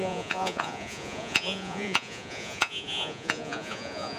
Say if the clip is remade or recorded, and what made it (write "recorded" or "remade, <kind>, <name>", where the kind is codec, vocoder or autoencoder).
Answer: remade, vocoder, Vocos